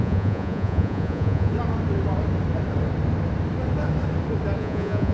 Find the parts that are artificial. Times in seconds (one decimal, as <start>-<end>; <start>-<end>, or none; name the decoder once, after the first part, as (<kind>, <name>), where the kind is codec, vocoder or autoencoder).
0.0-1.5 (vocoder, Vocos); 4.6-5.1